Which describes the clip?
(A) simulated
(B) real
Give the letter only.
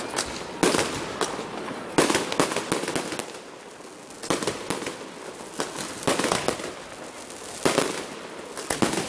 B